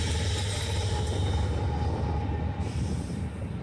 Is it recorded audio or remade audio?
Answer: recorded